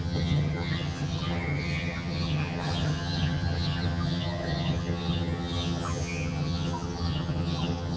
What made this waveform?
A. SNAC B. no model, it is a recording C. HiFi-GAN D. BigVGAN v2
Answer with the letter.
C